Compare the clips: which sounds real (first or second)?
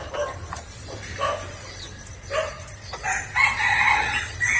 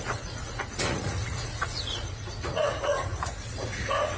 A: first